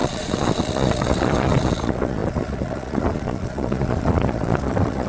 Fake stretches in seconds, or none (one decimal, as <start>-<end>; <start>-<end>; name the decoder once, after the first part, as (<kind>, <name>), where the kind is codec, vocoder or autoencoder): 0.0-5.1 (vocoder, Vocos)